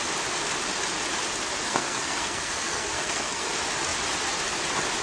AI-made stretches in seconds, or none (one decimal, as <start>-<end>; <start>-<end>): 1.6-3.5